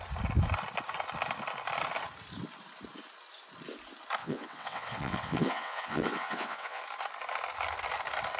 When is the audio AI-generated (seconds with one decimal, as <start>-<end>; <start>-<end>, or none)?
4.2-6.8